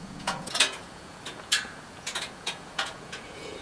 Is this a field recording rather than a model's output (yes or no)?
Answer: no